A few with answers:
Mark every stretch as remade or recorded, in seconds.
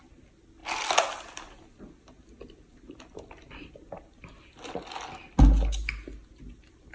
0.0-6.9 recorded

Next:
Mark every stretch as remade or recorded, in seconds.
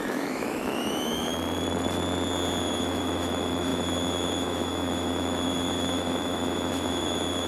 0.0-1.3 remade; 1.3-2.6 recorded; 2.6-7.5 remade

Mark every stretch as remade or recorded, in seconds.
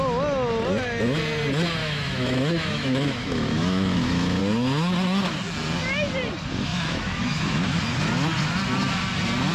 0.0-1.8 recorded; 1.8-4.4 remade; 4.4-6.7 recorded; 6.7-7.8 remade; 7.8-9.5 recorded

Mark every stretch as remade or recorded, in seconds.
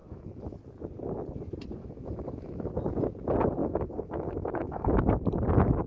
0.0-0.6 remade; 0.6-1.8 recorded; 1.8-2.7 remade; 2.7-3.6 recorded; 3.6-5.1 remade; 5.1-5.9 recorded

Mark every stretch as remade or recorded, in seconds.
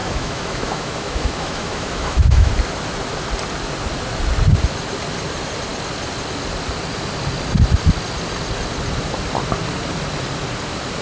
0.0-2.5 remade; 2.5-11.0 recorded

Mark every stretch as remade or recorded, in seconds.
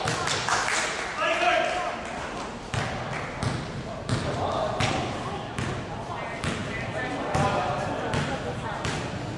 0.0-9.4 recorded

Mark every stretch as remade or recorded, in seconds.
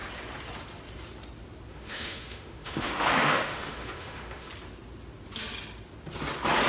0.0-1.7 recorded; 1.7-4.5 remade; 4.5-6.7 recorded